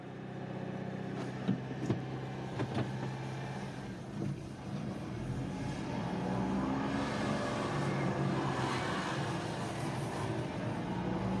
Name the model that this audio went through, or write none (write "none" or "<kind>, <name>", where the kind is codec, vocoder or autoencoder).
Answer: none